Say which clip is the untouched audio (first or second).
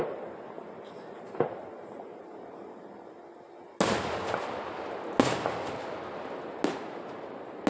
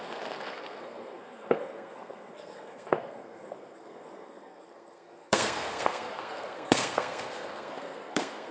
first